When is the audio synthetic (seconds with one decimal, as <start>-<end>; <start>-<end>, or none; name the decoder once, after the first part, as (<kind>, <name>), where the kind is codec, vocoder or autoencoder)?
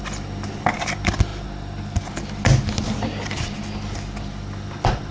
none